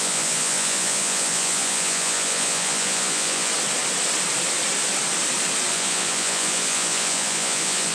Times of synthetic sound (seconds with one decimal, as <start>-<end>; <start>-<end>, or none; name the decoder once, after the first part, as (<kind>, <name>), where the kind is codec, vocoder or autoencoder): 0.0-3.5 (vocoder, Vocos); 5.7-7.9